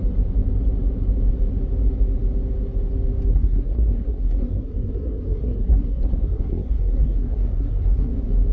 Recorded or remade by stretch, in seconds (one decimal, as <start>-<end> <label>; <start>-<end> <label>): 0.0-3.3 recorded; 3.3-8.1 remade; 8.1-8.5 recorded